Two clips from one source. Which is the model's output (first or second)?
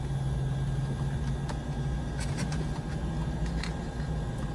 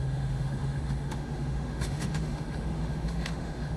second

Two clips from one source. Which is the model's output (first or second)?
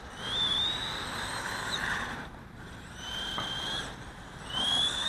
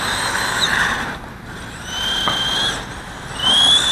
first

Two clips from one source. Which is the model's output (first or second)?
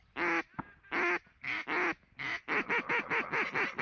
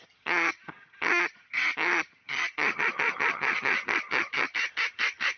second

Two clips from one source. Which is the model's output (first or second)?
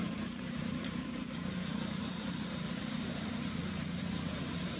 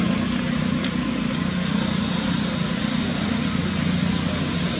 first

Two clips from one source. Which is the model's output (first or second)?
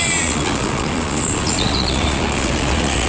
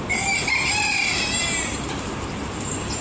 first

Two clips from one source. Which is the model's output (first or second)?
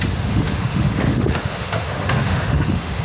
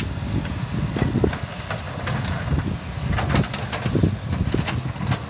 first